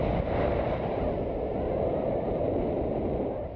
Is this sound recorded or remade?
recorded